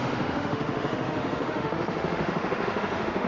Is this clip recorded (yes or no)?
no